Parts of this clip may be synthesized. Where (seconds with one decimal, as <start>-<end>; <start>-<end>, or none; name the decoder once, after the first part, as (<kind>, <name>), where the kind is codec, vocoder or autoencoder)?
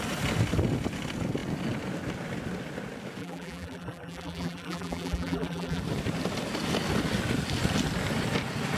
3.2-5.8 (vocoder, BigVGAN v2)